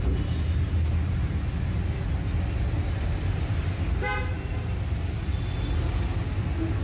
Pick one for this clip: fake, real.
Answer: real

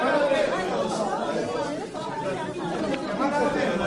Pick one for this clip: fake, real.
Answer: fake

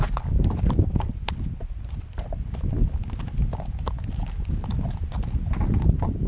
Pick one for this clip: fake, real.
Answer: real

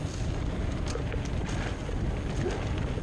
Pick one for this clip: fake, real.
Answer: real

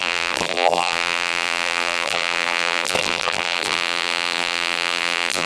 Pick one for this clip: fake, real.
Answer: fake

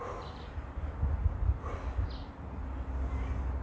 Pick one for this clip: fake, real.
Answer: real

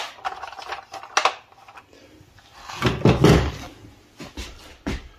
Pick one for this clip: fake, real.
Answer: real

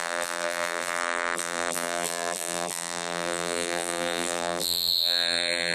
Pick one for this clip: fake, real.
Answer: fake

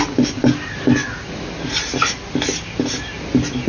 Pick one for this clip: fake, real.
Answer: real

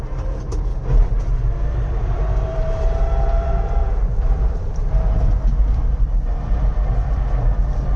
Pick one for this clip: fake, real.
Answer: fake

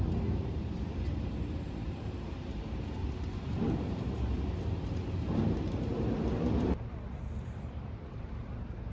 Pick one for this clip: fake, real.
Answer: fake